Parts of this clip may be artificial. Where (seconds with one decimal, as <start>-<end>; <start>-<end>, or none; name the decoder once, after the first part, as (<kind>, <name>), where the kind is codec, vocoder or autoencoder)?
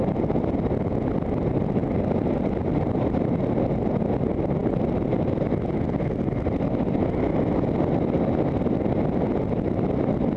none